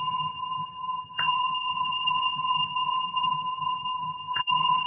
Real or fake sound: fake